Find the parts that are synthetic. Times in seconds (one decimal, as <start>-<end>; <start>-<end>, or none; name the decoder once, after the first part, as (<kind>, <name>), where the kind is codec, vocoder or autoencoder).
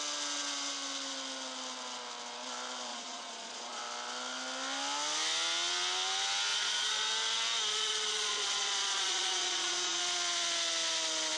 2.9-3.8 (vocoder, Vocos); 6.5-7.1; 7.7-10.0